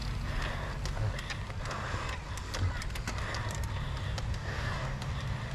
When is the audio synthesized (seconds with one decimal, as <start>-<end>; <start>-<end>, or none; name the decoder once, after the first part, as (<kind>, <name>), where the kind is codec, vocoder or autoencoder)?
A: 4.3-5.1 (codec, DAC)